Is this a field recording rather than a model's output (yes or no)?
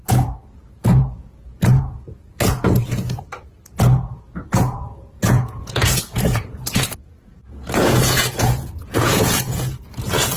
no